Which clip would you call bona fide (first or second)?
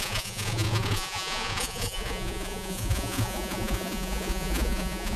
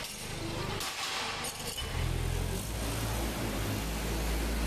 second